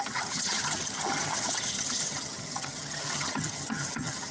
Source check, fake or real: fake